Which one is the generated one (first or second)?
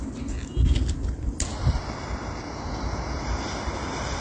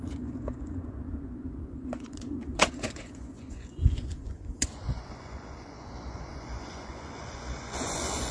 second